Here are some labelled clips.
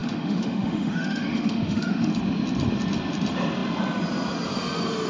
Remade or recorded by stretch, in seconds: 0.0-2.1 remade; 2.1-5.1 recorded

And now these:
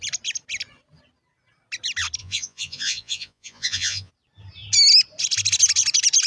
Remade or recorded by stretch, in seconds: 0.0-2.2 recorded; 2.2-4.1 remade; 4.1-6.3 recorded